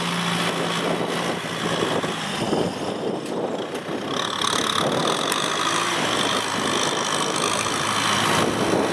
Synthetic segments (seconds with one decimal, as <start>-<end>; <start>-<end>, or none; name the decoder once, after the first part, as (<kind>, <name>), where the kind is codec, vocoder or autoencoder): none